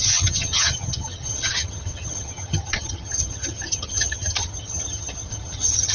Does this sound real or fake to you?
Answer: fake